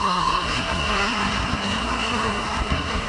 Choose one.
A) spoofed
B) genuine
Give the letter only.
A